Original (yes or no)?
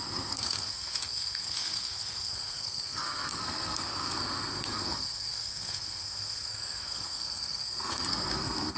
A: no